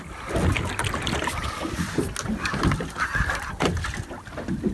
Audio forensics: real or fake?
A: real